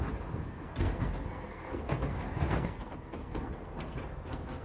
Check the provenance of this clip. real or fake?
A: fake